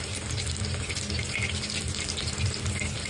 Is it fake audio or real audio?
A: real